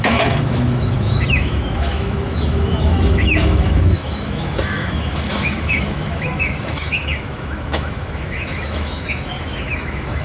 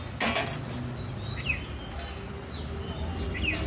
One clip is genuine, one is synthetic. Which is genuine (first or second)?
second